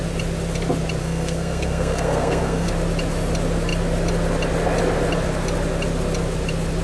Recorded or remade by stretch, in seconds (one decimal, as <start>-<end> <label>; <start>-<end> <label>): 0.0-1.0 recorded; 1.0-2.7 remade; 2.7-6.8 recorded